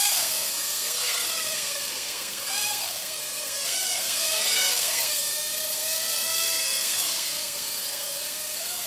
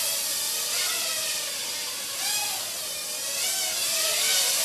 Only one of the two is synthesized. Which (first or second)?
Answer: first